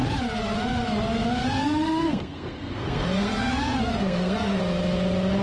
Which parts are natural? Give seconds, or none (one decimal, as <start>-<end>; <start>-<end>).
0.0-1.4; 4.6-5.4